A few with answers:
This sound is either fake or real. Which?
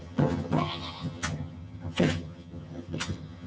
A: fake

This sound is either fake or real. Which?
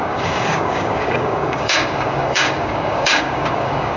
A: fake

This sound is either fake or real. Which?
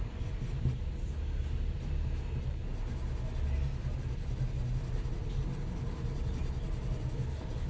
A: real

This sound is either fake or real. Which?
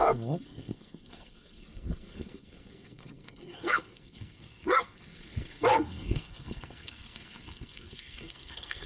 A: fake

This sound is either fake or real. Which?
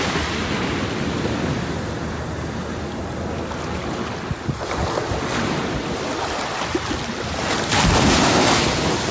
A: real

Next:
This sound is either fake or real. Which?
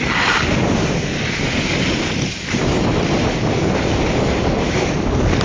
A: real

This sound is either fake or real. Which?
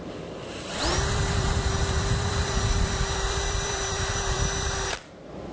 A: fake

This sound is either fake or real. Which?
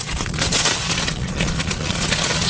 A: fake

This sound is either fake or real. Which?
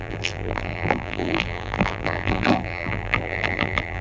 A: fake